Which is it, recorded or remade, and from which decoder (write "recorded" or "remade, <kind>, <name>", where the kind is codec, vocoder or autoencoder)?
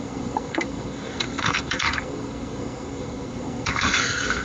remade, codec, SNAC